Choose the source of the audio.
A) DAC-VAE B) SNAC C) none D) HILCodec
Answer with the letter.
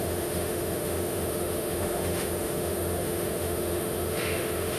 A